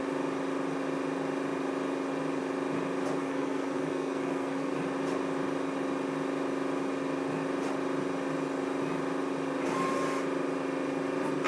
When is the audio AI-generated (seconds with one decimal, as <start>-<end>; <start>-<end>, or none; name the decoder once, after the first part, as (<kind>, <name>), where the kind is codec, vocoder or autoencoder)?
3.2-4.8 (codec, SNAC)